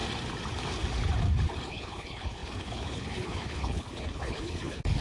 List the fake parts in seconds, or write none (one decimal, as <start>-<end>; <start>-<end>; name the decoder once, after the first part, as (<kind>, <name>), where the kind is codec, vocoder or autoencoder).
1.7-5.0 (codec, HILCodec)